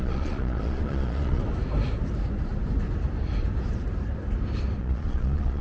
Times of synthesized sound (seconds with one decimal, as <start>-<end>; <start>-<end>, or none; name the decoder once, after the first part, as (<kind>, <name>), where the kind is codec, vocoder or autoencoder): 0.0-1.4 (vocoder, Vocos); 4.8-5.6